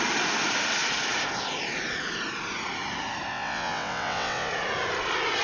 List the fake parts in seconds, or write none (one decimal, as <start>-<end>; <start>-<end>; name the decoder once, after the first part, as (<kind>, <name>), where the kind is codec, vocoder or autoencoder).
3.3-4.5 (vocoder, WaveNeXt)